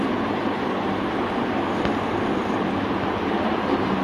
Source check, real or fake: real